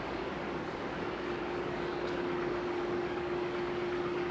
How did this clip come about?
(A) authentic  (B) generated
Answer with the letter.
B